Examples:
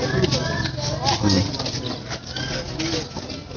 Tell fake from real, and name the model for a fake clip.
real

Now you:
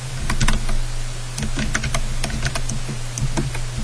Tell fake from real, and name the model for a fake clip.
real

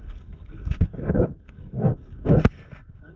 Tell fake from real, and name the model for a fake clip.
fake, codec, SNAC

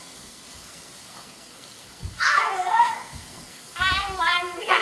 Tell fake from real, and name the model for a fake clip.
fake, codec, SNAC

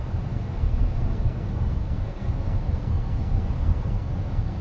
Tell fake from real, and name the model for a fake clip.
fake, codec, SNAC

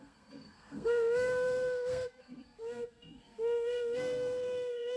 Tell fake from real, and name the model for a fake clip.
fake, codec, SNAC